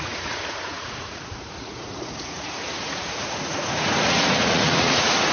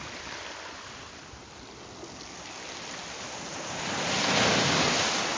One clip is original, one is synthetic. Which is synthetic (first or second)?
first